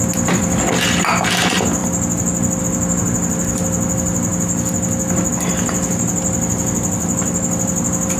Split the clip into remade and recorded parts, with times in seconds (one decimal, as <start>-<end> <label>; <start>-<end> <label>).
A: 0.0-8.2 recorded